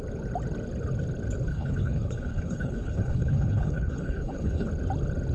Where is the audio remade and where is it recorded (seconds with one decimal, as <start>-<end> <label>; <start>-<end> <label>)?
0.0-1.5 recorded; 1.5-4.7 remade; 4.7-5.3 recorded